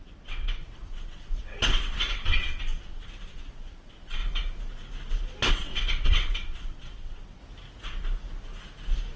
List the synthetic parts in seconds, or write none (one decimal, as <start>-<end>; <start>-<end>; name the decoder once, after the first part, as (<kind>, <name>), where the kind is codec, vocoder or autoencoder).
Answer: 0.0-4.2 (vocoder, WaveNeXt); 5.5-7.4